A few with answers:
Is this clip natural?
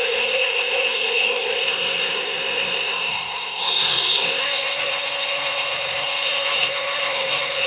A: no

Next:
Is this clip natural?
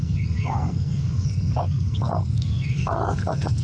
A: no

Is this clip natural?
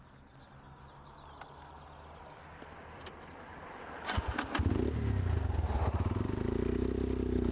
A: yes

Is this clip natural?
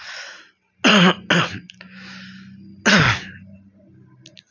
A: yes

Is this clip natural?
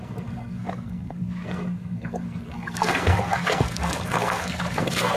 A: no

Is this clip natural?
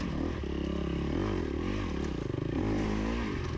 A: yes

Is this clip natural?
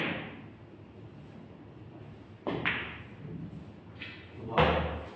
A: yes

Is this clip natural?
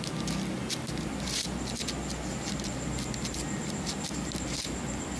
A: yes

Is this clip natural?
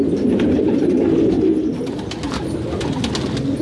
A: yes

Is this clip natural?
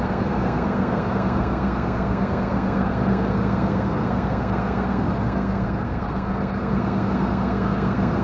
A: no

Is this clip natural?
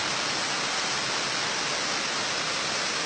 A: yes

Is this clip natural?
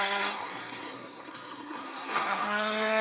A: no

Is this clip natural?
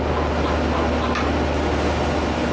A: yes